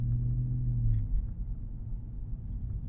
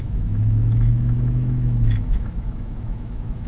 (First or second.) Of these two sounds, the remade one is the second